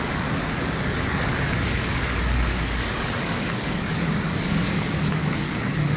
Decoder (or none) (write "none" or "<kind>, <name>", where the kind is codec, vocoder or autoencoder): codec, DAC